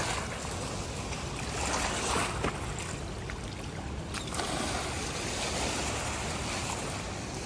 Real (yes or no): yes